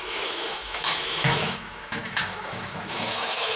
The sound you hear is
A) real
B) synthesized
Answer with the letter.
B